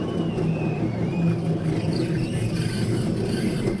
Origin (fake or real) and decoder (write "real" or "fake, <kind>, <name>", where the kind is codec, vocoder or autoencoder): real